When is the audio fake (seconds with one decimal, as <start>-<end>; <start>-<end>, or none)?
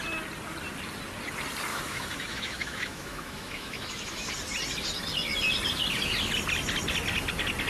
1.7-4.3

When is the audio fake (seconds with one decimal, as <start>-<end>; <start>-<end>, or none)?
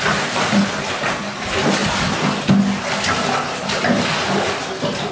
none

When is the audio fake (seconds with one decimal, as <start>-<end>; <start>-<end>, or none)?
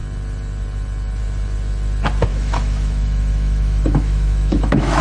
2.3-5.0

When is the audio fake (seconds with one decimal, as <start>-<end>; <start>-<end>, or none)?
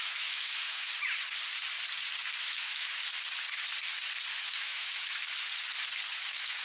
0.0-0.9; 2.4-3.0; 4.4-5.2; 6.1-6.6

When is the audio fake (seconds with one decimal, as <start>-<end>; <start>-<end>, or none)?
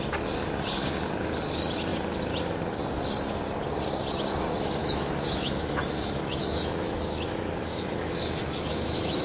4.8-9.2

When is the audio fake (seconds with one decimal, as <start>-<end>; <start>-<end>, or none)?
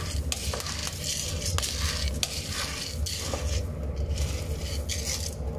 none